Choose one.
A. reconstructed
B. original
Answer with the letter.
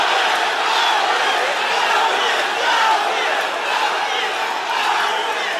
B